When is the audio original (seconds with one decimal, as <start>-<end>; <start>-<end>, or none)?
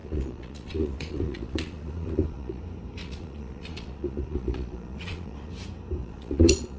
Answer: 2.6-3.0; 5.5-6.0